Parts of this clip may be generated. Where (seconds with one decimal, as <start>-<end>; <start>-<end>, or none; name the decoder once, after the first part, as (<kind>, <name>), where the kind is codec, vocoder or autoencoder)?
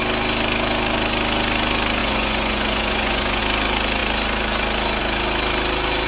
2.0-3.4 (vocoder, Vocos)